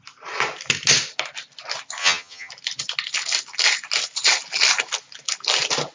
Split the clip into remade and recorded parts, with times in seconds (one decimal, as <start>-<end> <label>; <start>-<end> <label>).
0.0-2.0 recorded; 2.0-2.5 remade; 2.5-5.9 recorded